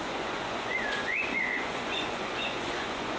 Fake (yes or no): yes